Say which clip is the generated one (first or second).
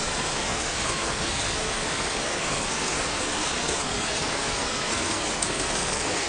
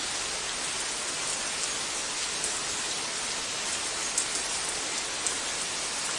first